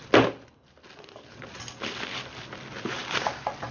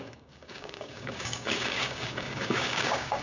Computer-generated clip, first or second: second